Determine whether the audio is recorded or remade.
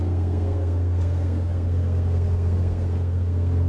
remade